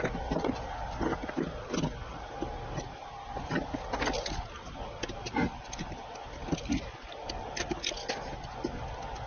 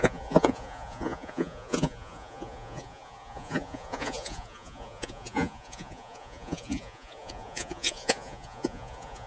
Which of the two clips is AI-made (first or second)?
second